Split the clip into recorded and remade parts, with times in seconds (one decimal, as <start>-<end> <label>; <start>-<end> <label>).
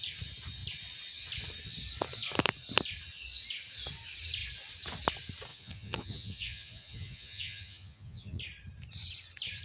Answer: 0.0-5.5 recorded; 5.5-8.4 remade; 8.4-9.6 recorded